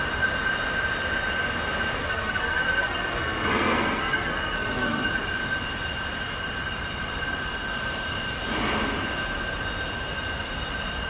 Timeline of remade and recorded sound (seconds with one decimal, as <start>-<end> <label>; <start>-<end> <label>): 0.0-2.0 recorded; 2.0-5.1 remade; 5.1-11.1 recorded